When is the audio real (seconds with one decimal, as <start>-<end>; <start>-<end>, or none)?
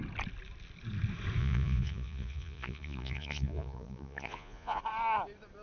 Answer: 0.0-1.4; 4.8-5.6